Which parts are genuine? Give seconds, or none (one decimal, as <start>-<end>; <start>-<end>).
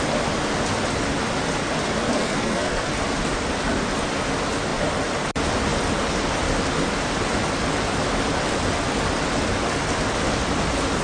0.0-2.2; 2.9-11.0